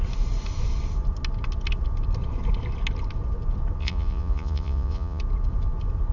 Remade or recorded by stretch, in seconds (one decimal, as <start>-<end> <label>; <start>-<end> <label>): 0.0-3.8 recorded; 3.8-5.2 remade; 5.2-6.1 recorded